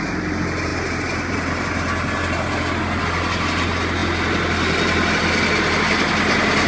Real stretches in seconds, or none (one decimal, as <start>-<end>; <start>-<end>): 0.0-6.7